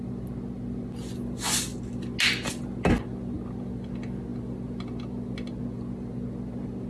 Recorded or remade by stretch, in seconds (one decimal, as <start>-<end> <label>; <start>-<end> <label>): 0.0-6.9 recorded